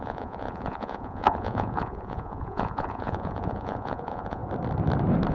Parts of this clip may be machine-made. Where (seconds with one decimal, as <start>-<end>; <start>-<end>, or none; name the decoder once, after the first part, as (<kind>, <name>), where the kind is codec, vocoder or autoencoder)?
0.0-4.4 (vocoder, Vocos)